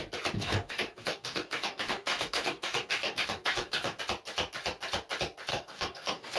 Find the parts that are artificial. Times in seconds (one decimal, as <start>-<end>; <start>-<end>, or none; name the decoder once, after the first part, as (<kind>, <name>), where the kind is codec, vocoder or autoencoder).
0.4-4.0 (codec, DAC); 5.5-6.4

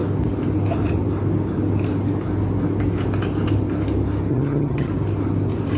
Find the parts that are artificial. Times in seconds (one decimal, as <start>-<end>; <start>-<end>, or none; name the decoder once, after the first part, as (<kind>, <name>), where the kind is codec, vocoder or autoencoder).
4.3-4.9 (vocoder, HiFi-GAN)

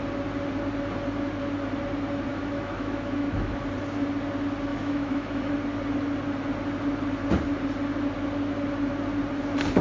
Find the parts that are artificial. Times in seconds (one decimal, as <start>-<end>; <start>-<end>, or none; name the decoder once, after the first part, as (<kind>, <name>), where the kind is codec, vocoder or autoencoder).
2.3-3.5 (autoencoder, DAC-VAE); 4.7-5.5